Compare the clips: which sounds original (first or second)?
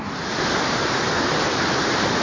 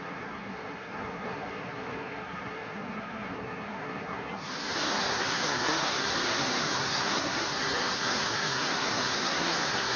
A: first